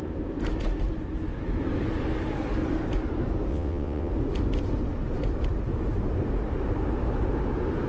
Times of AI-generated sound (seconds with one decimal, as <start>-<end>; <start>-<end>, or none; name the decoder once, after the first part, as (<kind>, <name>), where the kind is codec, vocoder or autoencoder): 3.5-4.1 (vocoder, WaveNeXt)